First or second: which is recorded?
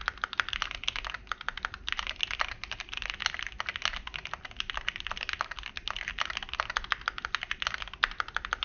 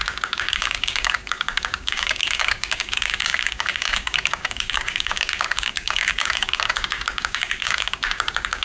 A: first